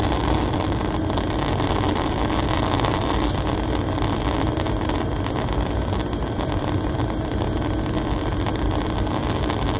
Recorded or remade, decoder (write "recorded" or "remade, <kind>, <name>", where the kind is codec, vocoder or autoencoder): recorded